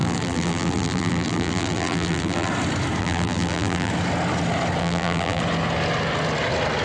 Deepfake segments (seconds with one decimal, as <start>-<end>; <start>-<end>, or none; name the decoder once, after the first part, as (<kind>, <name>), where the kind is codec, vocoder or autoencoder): 0.0-2.5 (vocoder, BigVGAN v2); 3.0-3.9; 4.8-5.4